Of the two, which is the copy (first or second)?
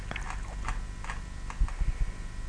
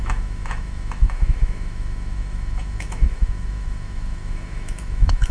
second